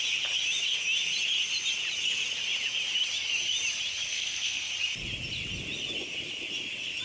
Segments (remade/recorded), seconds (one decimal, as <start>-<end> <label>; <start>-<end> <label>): 0.0-4.1 recorded; 4.1-4.7 remade; 4.7-7.0 recorded